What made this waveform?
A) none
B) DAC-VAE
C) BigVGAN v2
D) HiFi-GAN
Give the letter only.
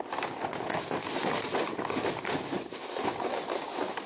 A